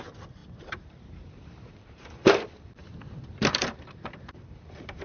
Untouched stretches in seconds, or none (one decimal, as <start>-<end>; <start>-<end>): 0.0-0.4; 2.8-3.4